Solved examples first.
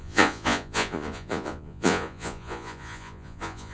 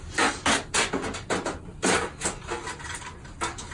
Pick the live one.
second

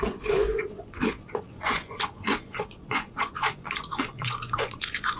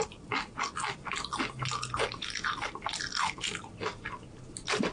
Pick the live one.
second